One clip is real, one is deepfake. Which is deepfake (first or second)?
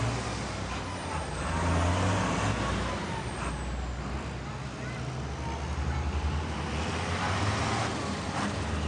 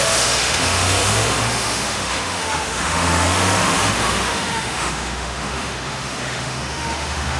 second